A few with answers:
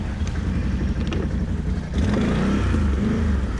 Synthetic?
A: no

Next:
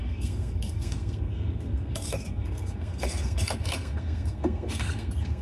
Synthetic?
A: yes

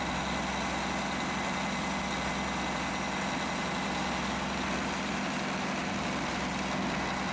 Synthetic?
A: no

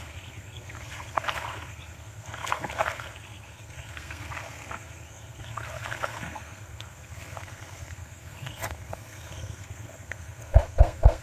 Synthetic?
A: yes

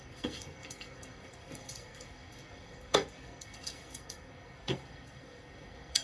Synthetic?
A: yes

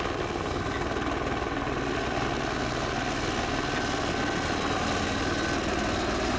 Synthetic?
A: no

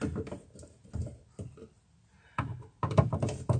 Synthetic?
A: no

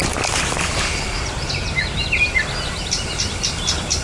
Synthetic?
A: no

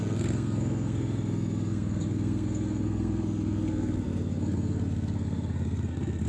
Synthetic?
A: yes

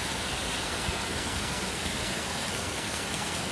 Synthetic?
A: yes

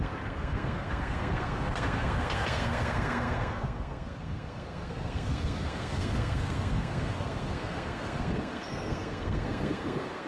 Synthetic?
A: yes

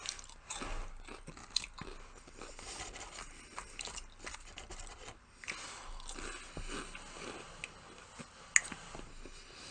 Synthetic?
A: no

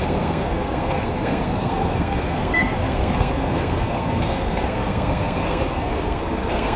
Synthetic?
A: yes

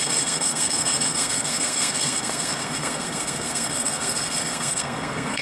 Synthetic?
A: yes